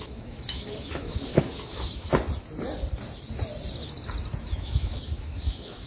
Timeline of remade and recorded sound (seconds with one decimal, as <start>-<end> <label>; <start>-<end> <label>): 0.0-2.1 remade; 2.1-4.4 recorded; 4.4-5.9 remade